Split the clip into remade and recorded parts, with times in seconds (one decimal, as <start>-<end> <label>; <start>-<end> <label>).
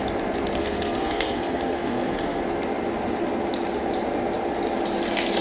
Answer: 0.0-0.6 recorded; 0.6-2.4 remade; 2.4-5.4 recorded